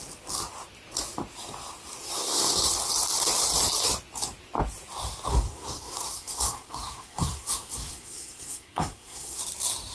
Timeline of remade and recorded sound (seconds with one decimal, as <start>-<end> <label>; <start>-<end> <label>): 0.0-2.0 recorded; 2.0-2.7 remade; 2.7-5.3 recorded; 5.3-9.4 remade; 9.4-9.9 recorded